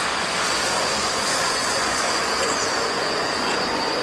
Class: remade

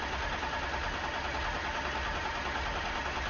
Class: recorded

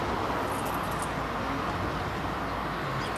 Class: recorded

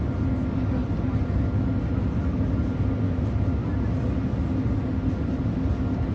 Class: recorded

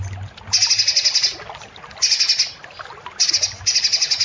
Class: recorded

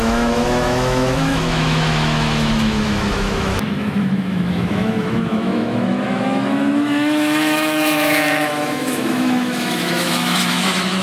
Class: remade